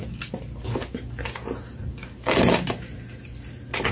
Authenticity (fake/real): real